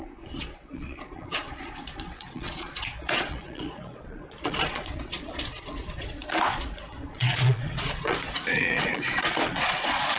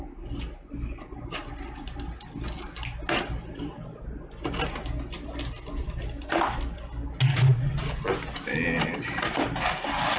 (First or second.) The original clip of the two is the second